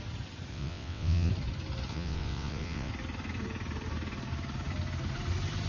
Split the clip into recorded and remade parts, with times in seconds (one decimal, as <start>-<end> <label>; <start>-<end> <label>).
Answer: 0.0-0.5 recorded; 0.5-1.3 remade; 1.3-1.9 recorded; 1.9-2.9 remade; 2.9-5.7 recorded